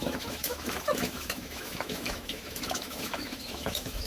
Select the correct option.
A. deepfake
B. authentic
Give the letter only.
A